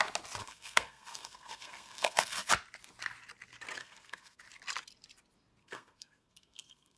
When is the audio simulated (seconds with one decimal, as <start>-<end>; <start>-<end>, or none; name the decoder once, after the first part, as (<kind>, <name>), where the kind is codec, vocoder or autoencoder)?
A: 0.4-2.5 (codec, SNAC); 3.8-4.4; 5.6-7.0